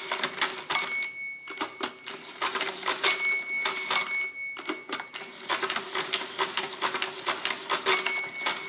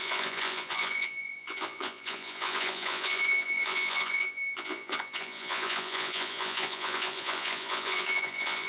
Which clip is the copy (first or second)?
second